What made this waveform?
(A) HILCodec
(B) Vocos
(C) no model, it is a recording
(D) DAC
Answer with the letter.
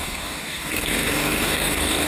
D